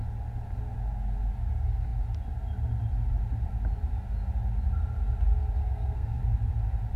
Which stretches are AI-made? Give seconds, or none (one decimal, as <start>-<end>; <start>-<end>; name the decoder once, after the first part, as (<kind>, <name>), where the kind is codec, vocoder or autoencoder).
5.6-6.2 (codec, SNAC)